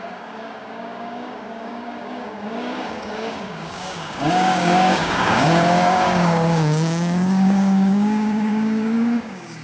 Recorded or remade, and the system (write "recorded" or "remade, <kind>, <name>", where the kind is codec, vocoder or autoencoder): remade, codec, DAC